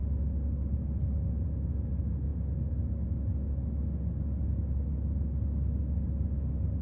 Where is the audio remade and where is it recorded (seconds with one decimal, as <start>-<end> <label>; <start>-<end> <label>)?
0.0-6.8 recorded